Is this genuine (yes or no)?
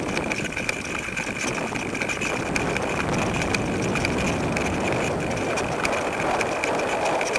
yes